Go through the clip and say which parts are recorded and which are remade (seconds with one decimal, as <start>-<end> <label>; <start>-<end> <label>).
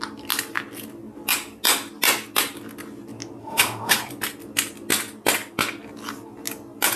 0.0-3.4 recorded; 3.4-4.0 remade; 4.0-7.0 recorded